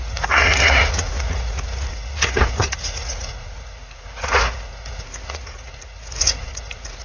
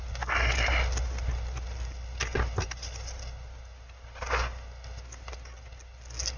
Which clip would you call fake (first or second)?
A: first